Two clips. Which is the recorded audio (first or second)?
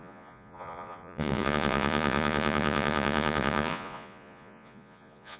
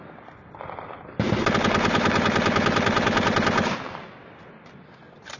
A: second